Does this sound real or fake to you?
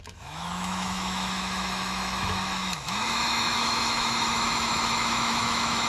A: fake